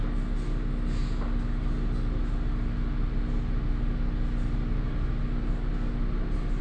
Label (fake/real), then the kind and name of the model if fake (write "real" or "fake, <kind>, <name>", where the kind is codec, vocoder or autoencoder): real